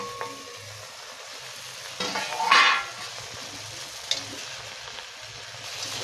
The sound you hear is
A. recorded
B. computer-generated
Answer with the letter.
A